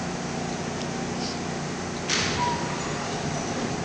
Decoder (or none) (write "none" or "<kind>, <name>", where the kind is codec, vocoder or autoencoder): none